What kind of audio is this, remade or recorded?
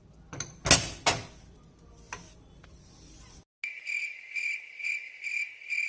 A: recorded